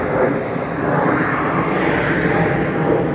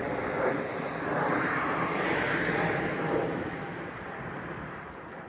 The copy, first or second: second